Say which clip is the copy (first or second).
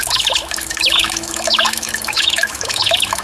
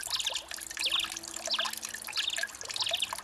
first